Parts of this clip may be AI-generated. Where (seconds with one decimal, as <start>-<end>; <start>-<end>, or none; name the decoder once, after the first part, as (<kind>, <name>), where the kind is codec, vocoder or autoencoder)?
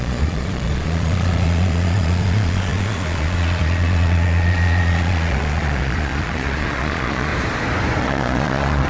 0.0-7.3 (vocoder, Vocos); 8.0-8.9